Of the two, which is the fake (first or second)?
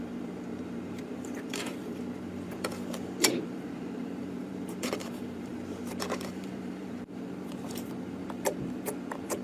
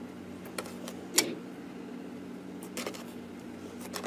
first